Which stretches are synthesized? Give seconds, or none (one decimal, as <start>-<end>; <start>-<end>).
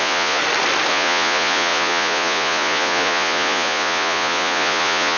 0.0-0.4; 0.9-5.2